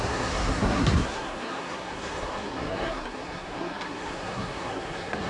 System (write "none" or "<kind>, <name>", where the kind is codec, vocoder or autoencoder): codec, SNAC